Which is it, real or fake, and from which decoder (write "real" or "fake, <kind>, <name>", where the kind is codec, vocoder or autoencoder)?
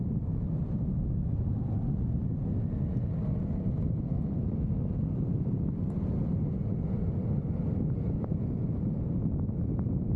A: real